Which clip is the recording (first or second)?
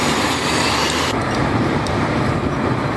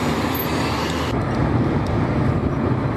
second